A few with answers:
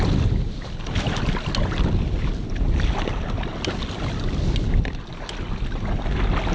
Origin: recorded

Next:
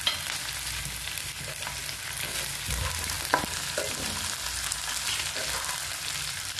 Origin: recorded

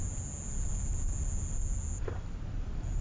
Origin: recorded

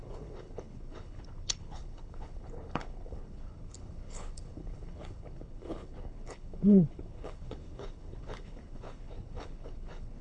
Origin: remade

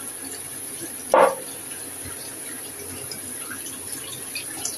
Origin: recorded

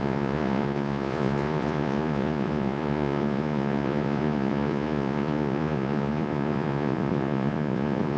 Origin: remade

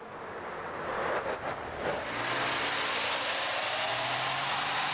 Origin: recorded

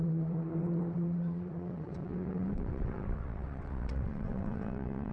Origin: remade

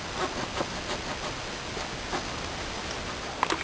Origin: recorded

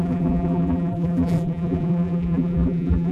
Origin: remade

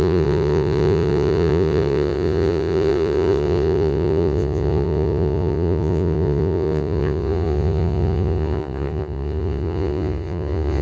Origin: remade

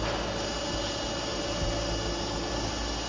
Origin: recorded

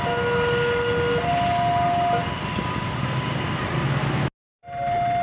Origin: recorded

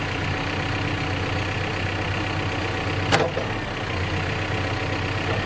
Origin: recorded